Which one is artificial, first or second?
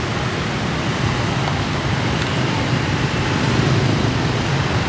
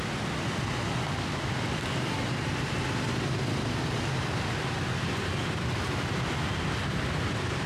first